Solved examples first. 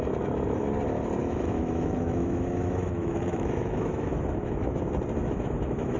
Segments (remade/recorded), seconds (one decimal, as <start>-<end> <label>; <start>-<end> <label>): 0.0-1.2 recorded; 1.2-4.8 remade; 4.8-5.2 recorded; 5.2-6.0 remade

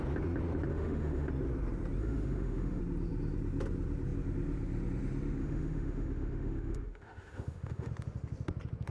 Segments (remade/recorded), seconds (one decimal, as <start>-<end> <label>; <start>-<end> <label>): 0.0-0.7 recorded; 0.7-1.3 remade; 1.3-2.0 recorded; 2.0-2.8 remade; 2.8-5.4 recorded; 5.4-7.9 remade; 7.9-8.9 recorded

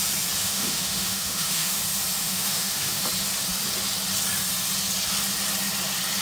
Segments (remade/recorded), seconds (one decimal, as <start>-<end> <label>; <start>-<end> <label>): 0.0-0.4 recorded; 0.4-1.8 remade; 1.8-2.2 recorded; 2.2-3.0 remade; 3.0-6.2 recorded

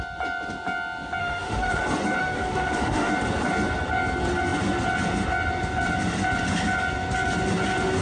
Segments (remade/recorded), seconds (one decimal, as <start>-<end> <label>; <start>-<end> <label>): 0.0-1.2 recorded; 1.2-1.8 remade; 1.8-2.2 recorded; 2.2-3.1 remade; 3.1-8.0 recorded

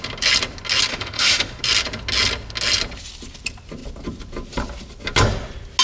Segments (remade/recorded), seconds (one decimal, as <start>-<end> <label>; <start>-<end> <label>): 0.0-0.9 recorded; 0.9-1.6 remade; 1.6-5.8 recorded

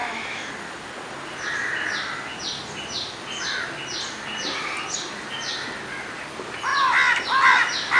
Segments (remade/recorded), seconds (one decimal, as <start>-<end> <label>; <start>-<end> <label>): 0.0-0.5 remade; 0.5-8.0 recorded

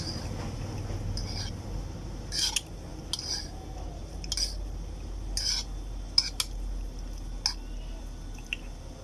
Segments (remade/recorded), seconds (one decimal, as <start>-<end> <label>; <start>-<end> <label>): 0.0-9.0 recorded

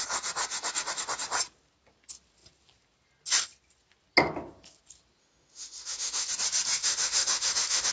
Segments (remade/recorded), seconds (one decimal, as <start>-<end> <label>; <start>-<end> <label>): 0.0-5.2 recorded; 5.2-6.3 remade; 6.3-6.8 recorded; 6.8-7.9 remade